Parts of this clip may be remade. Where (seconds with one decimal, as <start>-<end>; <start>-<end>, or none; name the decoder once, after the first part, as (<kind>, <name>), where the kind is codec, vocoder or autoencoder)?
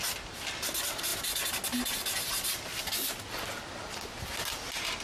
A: none